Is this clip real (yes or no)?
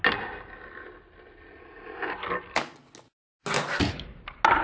yes